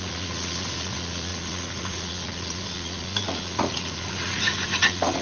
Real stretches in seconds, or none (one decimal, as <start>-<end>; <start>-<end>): none